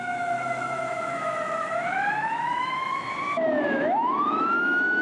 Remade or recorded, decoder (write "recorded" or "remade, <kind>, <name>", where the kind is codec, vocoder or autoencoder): remade, autoencoder, DAC-VAE